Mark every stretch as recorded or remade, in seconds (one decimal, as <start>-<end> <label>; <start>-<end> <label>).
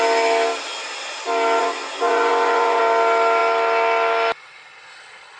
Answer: 0.0-1.6 recorded; 1.6-2.8 remade; 2.8-5.4 recorded